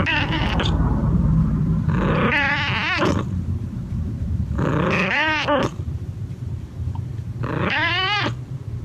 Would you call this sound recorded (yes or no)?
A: no